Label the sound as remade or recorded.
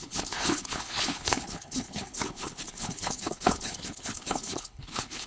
remade